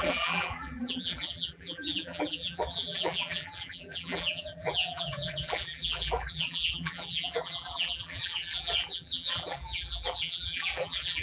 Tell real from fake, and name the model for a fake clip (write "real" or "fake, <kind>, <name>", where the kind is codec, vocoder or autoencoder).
fake, vocoder, BigVGAN v2